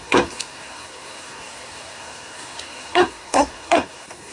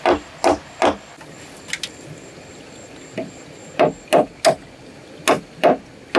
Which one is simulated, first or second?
first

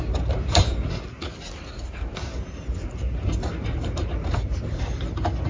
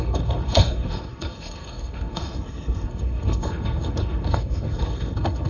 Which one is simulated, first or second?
second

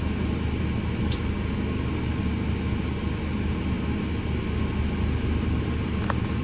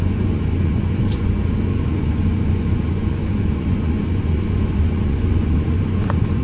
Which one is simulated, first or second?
second